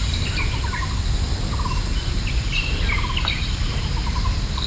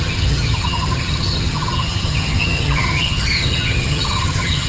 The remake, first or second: second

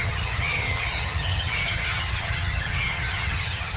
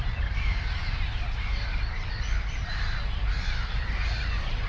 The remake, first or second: first